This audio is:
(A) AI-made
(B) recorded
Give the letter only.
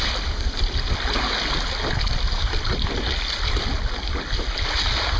B